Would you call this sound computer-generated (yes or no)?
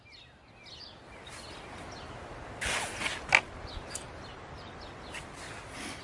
no